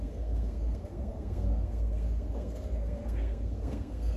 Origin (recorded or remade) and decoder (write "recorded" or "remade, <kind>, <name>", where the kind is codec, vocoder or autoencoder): remade, codec, SNAC